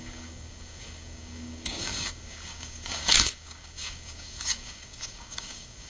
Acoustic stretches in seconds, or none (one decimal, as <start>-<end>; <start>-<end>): none